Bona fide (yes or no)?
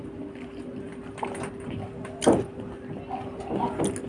yes